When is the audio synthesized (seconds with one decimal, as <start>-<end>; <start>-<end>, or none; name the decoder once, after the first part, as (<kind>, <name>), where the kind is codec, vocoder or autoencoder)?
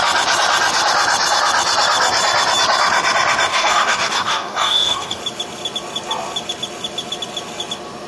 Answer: 3.5-5.2 (codec, DAC)